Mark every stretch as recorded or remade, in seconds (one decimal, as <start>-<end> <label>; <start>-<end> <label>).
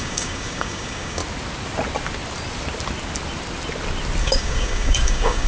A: 0.0-1.2 remade; 1.2-4.2 recorded; 4.2-5.5 remade